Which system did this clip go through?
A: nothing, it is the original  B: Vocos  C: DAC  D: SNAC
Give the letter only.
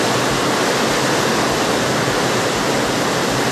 A